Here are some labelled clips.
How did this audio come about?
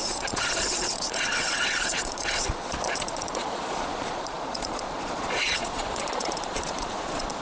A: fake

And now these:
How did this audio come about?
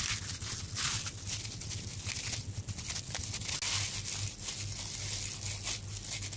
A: real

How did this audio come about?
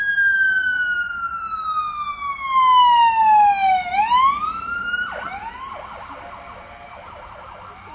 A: real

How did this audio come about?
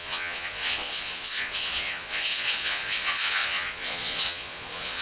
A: fake